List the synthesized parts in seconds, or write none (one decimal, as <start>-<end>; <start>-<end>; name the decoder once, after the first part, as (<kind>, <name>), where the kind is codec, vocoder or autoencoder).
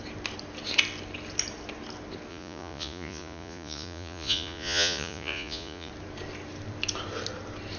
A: 2.3-5.9 (vocoder, Vocos)